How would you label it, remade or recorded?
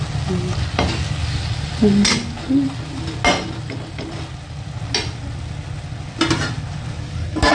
recorded